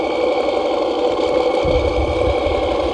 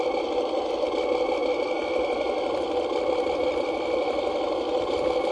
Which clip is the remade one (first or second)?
second